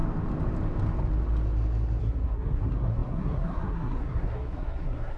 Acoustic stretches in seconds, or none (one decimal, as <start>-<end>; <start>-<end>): 0.0-2.0